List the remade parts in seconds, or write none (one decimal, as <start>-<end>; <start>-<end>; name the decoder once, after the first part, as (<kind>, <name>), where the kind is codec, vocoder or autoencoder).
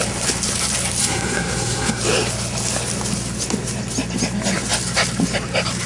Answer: 1.0-2.0 (codec, SNAC)